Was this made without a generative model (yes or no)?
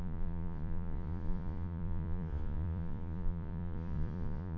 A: no